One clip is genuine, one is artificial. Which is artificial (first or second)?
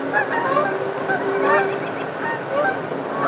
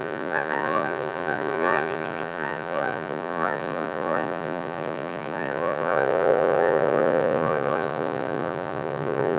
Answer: second